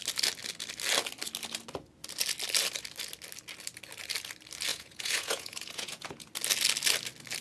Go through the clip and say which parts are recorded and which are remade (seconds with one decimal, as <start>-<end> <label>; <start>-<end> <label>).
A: 0.0-4.7 recorded; 4.7-6.3 remade; 6.3-7.4 recorded